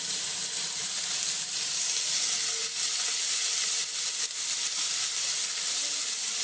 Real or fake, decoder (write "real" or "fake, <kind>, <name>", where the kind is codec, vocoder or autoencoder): real